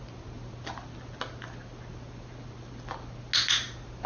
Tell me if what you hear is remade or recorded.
recorded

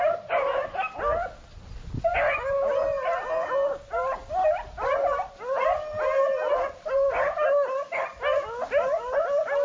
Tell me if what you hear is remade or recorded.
recorded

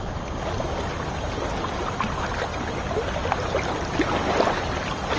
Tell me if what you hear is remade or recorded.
recorded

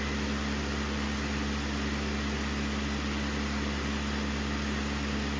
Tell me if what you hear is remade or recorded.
recorded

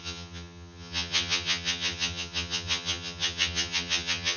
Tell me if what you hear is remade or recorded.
remade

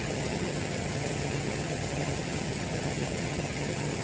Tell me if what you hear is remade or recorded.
remade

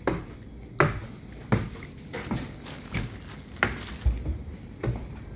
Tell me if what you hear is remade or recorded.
recorded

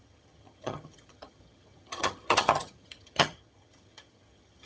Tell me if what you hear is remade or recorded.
remade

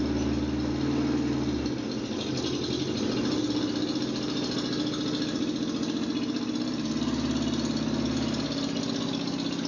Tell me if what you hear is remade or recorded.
recorded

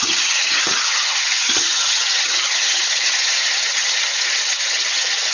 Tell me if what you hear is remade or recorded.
remade